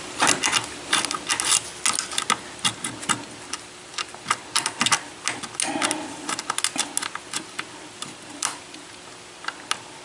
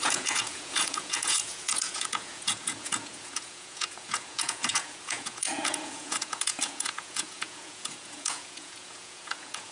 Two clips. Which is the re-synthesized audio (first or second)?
second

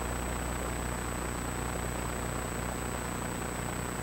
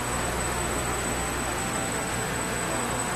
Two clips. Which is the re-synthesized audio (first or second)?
second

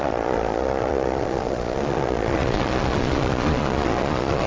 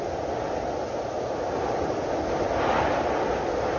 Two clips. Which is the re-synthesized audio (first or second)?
first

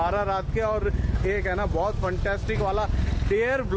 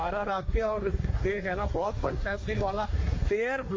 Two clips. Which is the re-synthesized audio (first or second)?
second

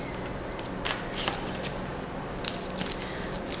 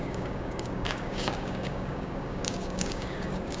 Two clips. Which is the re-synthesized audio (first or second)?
second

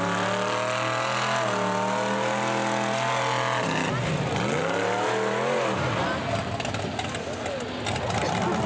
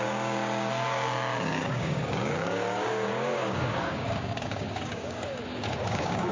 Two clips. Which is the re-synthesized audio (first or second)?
second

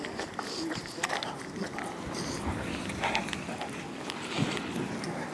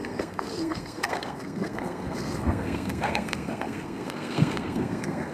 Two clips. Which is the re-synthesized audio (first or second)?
second